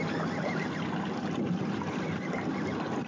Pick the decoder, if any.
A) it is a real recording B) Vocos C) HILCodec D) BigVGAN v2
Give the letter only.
A